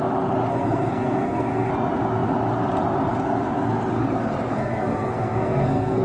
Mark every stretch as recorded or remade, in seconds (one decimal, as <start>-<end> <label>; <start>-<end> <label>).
0.0-0.5 recorded; 0.5-1.7 remade; 1.7-4.5 recorded; 4.5-6.0 remade